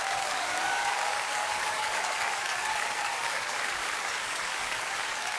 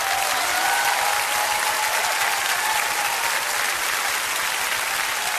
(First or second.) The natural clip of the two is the second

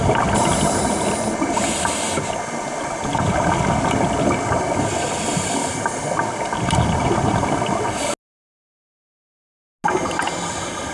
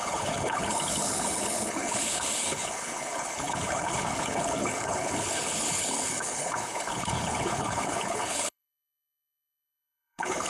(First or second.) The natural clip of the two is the first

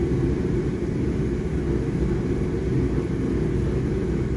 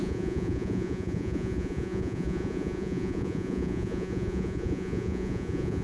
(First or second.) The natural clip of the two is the first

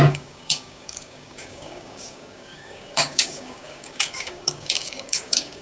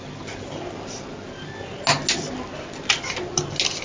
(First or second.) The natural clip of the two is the second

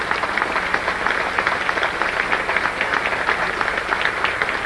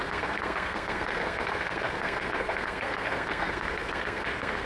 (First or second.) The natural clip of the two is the first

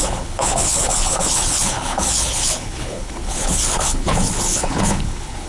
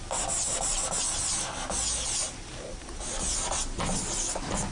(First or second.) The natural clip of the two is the second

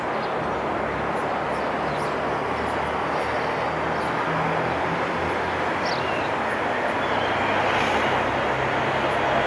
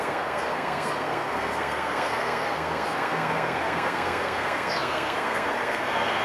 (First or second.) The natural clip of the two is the first